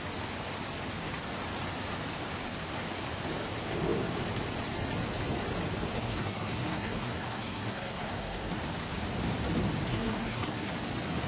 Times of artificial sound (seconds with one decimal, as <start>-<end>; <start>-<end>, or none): 5.9-8.6; 9.9-10.7